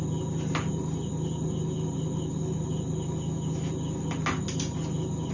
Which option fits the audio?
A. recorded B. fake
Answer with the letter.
A